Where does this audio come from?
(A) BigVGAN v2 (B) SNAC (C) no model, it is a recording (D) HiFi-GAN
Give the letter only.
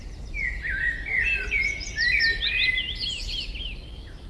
C